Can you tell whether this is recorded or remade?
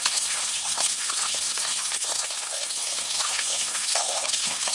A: remade